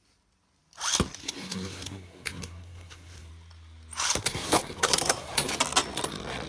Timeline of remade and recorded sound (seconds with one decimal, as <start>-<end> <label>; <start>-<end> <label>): 0.0-1.2 recorded; 1.2-3.3 remade; 3.3-4.2 recorded; 4.2-5.5 remade; 5.5-6.5 recorded